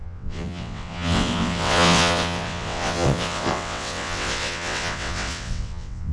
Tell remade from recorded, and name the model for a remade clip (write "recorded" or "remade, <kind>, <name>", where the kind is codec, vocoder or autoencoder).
remade, vocoder, WaveNeXt